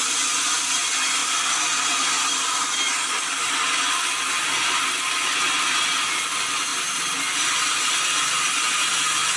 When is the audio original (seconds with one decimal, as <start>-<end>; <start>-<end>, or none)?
0.0-9.4